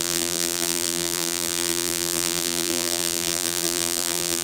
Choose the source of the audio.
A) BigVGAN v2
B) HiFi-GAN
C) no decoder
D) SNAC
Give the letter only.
A